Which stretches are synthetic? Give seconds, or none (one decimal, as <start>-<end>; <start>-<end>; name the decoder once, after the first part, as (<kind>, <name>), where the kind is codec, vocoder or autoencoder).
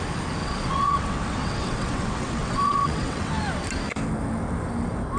0.4-3.3 (vocoder, WaveNeXt)